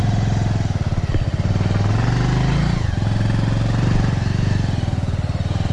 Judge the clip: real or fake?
real